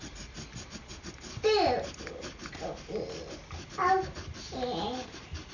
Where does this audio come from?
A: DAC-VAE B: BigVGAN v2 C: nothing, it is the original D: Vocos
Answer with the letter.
C